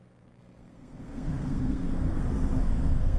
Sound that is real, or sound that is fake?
fake